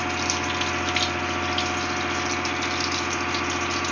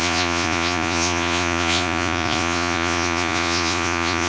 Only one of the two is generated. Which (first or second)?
second